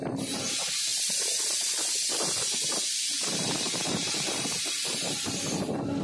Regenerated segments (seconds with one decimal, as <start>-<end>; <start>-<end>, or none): 2.8-5.4